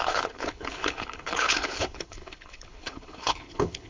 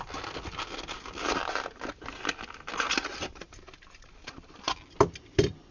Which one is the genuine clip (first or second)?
second